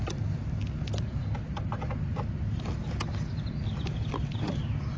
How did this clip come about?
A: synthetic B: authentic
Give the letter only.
B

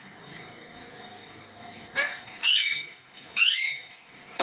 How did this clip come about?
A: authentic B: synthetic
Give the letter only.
B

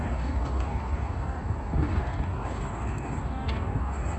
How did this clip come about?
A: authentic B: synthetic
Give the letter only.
B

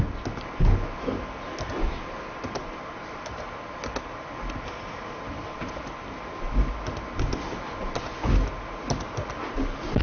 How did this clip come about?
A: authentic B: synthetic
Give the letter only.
A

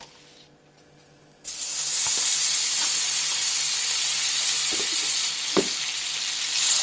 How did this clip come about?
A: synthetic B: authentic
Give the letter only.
B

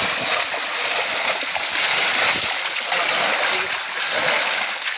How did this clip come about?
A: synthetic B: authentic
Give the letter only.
B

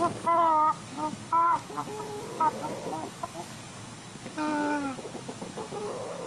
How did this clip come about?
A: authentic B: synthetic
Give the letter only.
B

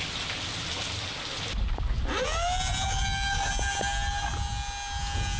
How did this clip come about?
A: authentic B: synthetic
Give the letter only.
A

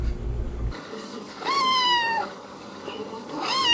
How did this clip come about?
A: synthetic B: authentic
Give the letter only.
A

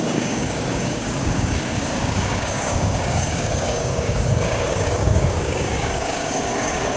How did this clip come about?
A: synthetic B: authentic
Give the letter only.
A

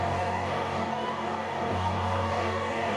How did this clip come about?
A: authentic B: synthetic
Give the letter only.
B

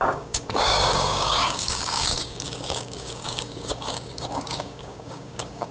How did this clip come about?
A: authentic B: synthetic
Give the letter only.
B